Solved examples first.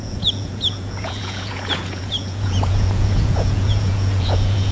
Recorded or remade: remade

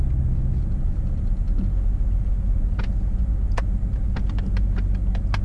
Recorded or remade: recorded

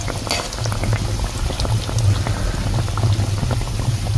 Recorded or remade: recorded